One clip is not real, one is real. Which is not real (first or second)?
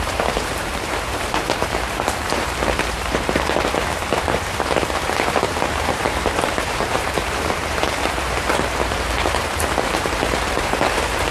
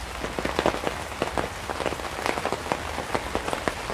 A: first